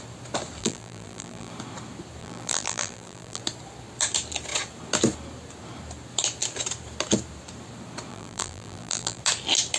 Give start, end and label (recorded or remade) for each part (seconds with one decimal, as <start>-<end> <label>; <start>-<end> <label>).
0.0-0.6 recorded; 0.6-1.5 remade; 1.5-2.2 recorded; 2.2-3.4 remade; 3.4-8.1 recorded; 8.1-9.2 remade; 9.2-9.8 recorded